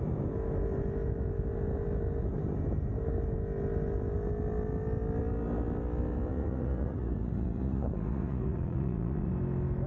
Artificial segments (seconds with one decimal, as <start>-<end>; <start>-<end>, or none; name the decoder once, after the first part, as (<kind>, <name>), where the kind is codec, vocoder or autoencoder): 6.3-9.3 (vocoder, Vocos)